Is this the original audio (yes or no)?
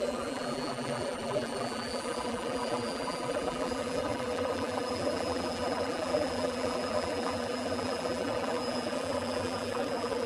no